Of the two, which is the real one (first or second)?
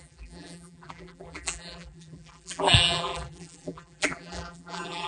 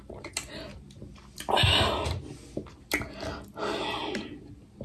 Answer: second